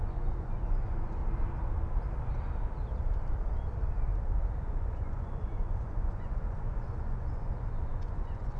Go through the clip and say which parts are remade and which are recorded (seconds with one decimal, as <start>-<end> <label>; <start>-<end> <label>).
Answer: 0.0-1.2 remade; 1.2-4.6 recorded; 4.6-8.6 remade